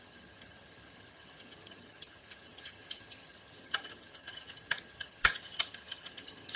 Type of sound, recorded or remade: remade